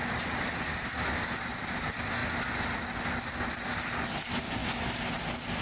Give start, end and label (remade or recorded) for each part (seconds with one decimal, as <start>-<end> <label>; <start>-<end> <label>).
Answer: 0.0-5.6 recorded